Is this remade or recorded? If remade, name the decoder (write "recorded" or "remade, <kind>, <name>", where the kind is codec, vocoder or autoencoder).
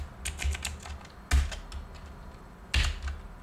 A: recorded